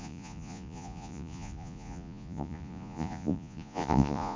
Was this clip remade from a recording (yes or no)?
yes